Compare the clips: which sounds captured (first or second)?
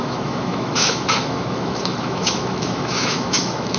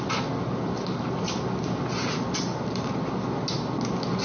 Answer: second